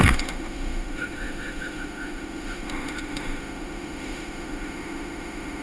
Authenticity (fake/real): fake